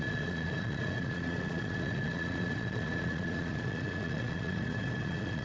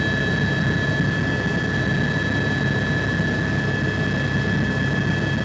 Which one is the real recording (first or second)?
second